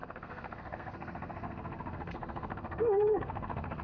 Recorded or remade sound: remade